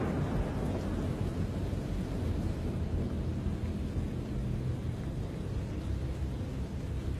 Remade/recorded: recorded